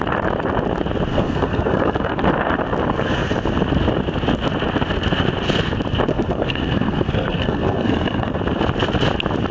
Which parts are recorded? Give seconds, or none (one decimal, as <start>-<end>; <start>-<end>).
0.0-1.1; 2.2-6.1; 8.4-9.5